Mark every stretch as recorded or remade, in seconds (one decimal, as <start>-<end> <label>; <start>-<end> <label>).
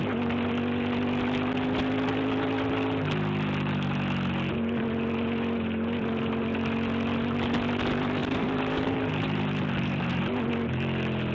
0.0-8.2 recorded; 8.2-10.2 remade; 10.2-11.3 recorded